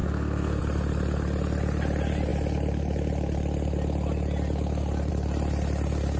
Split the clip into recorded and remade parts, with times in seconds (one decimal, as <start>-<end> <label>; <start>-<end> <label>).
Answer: 0.0-0.6 remade; 0.6-6.2 recorded